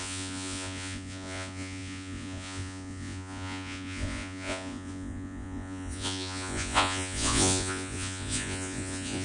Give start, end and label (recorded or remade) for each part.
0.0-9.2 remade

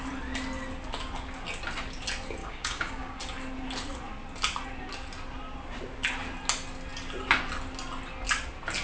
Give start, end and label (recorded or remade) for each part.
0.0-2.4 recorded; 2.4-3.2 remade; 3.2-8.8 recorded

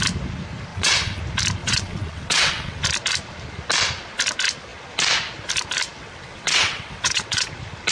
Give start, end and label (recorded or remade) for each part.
0.0-0.7 recorded; 0.7-1.2 remade; 1.2-1.6 recorded; 1.6-2.8 remade; 2.8-6.0 recorded; 6.0-7.5 remade; 7.5-7.9 recorded

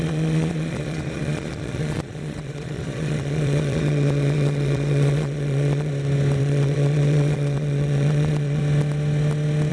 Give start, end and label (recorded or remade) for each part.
0.0-5.9 remade; 5.9-6.4 recorded; 6.4-8.6 remade; 8.6-9.7 recorded